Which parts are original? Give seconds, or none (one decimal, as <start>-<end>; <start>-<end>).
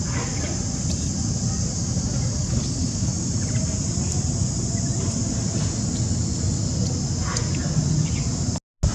0.0-2.4; 3.1-8.9